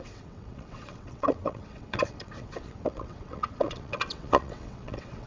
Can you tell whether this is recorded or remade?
remade